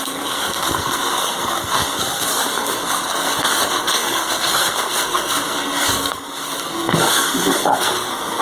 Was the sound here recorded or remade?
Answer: remade